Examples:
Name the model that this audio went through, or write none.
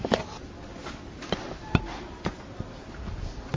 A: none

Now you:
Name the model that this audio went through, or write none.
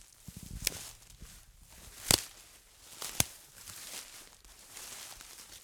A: none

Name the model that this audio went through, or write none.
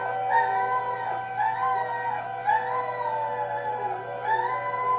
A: none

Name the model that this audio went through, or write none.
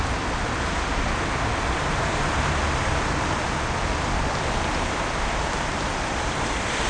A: vocoder, BigVGAN v2